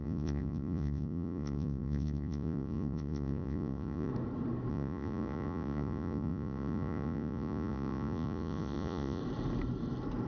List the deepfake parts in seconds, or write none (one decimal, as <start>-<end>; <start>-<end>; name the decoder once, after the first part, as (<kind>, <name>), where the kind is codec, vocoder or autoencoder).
0.0-4.1 (vocoder, Vocos); 4.7-9.2